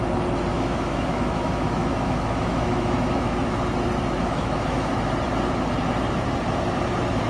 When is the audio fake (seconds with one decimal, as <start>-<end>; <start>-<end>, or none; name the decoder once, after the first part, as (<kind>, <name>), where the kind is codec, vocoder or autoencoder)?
0.5-3.6 (autoencoder, DAC-VAE); 4.2-4.9